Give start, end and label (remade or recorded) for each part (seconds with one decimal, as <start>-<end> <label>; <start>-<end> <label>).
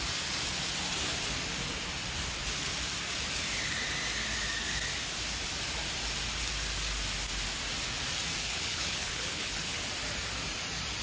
0.0-8.4 recorded; 8.4-9.9 remade; 9.9-11.0 recorded